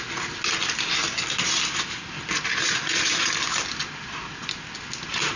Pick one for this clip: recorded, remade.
recorded